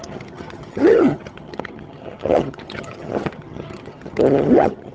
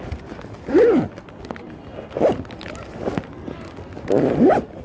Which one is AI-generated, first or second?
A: first